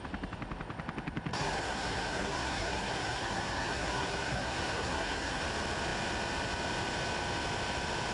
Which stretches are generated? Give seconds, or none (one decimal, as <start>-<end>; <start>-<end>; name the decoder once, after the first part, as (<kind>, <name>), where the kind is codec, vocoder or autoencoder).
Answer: 1.3-5.4 (codec, SNAC)